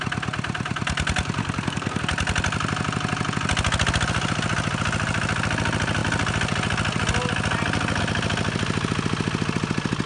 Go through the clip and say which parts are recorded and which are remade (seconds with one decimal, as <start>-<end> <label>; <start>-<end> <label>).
0.0-1.4 recorded; 1.4-2.0 remade; 2.0-10.1 recorded